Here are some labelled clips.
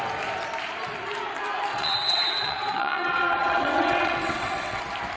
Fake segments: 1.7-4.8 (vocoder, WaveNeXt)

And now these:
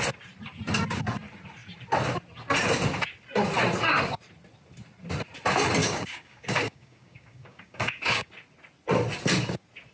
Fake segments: 5.8-8.3 (codec, DAC)

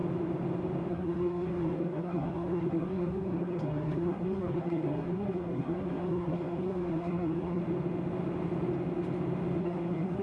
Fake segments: 0.9-7.6 (codec, SNAC); 9.6-10.2

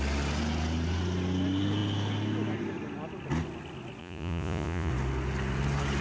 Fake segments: 4.0-4.9 (vocoder, Vocos)

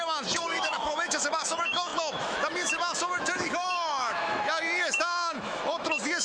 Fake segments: 0.0-6.2 (autoencoder, DAC-VAE)

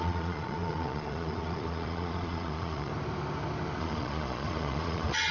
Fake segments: 0.0-2.9 (vocoder, Vocos); 3.8-5.3